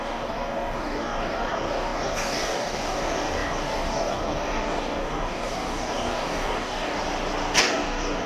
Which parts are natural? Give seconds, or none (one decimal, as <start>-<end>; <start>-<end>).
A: 7.0-7.6